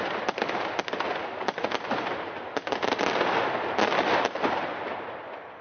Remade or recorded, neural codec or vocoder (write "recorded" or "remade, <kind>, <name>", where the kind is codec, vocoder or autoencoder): recorded